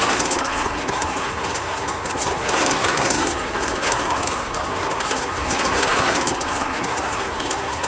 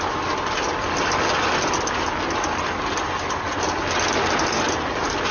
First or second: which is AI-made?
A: first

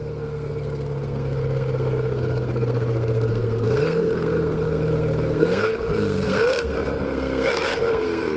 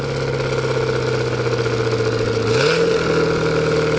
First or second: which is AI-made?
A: first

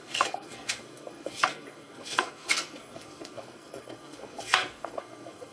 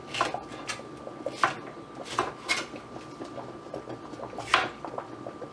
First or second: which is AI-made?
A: first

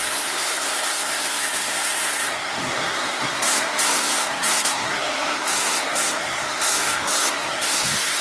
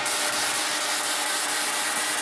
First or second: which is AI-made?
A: first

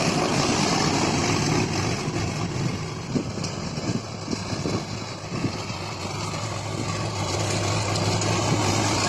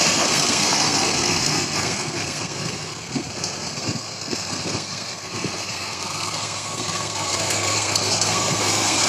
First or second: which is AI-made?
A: second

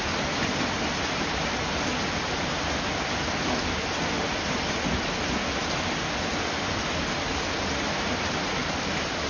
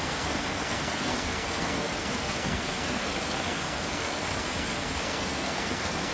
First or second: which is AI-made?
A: second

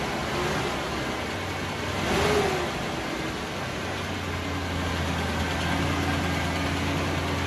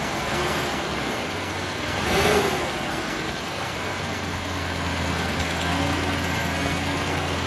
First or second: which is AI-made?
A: second